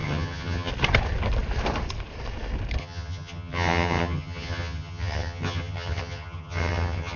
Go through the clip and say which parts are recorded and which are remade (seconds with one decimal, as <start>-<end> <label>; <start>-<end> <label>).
0.0-0.7 remade; 0.7-2.8 recorded; 2.8-7.2 remade